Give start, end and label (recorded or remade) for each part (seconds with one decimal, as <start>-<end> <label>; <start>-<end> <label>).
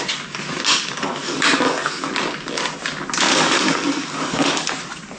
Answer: 0.0-0.7 recorded; 0.7-2.1 remade; 2.1-3.3 recorded; 3.3-4.7 remade; 4.7-5.2 recorded